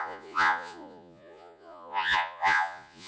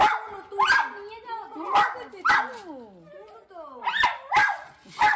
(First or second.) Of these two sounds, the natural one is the second